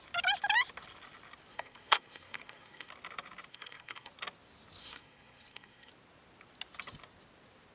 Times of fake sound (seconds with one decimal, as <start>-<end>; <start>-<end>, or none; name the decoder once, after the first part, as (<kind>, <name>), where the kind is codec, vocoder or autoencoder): 1.5-2.9 (codec, SNAC); 3.5-4.1; 4.8-5.9

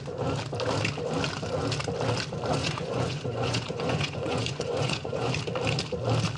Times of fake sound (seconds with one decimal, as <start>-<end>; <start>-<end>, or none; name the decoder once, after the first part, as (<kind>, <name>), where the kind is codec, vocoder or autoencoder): 2.6-5.3 (vocoder, Vocos)

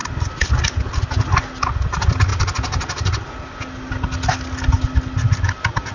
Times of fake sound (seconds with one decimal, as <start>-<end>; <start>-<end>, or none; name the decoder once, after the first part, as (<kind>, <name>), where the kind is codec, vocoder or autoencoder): none

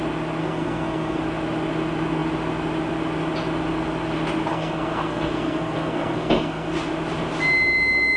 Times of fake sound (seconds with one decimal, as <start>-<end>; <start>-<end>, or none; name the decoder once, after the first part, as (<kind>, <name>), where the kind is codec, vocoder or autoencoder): 0.4-1.2 (codec, SNAC); 4.5-6.7

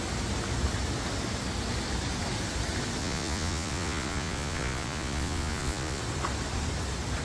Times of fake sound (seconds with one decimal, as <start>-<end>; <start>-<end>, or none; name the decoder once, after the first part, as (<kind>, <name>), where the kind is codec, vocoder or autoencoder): 3.0-6.0 (vocoder, Vocos)

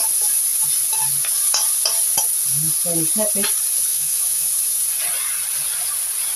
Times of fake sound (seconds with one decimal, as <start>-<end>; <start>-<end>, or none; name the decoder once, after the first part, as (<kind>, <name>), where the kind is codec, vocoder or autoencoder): 3.9-4.5 (autoencoder, DAC-VAE)

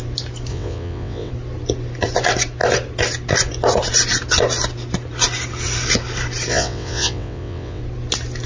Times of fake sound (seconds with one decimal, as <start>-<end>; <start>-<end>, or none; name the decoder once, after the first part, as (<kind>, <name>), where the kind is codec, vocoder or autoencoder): 0.5-1.3 (vocoder, WaveNeXt); 6.5-7.8

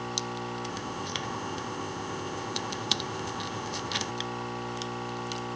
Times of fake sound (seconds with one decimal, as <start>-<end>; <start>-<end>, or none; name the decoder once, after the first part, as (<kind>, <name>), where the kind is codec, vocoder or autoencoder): 0.7-4.1 (codec, ZipCodec)